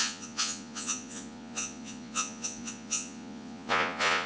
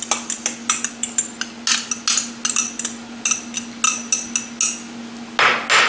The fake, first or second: first